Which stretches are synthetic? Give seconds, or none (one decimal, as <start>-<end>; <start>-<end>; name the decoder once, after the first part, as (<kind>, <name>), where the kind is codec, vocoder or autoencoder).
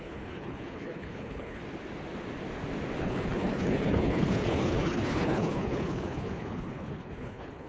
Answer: 0.0-1.6 (codec, HILCodec); 3.0-7.7